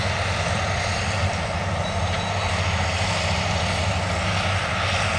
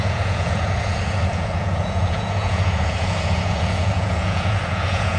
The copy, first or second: second